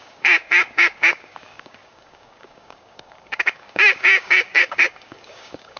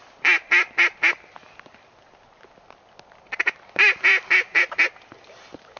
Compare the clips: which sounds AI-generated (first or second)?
first